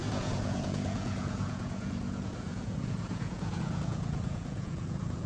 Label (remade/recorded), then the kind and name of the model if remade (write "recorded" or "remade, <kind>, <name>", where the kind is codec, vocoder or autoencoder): remade, vocoder, Vocos